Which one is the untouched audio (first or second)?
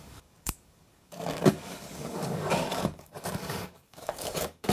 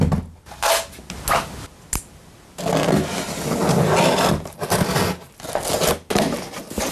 second